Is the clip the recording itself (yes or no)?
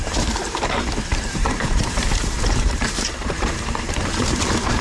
no